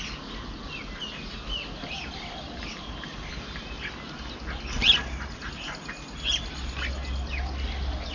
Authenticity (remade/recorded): recorded